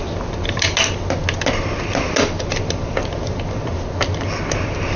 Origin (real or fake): real